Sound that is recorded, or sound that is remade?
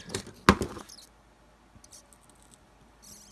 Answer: recorded